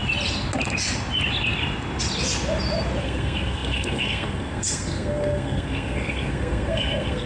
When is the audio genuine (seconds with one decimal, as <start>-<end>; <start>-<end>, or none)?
0.0-3.0